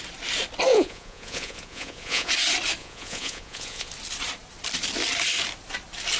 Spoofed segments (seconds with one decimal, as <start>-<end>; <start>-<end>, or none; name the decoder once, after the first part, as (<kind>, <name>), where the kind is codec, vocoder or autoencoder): 0.7-2.3 (vocoder, Vocos); 2.8-3.9